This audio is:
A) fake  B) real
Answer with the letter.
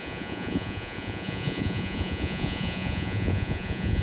A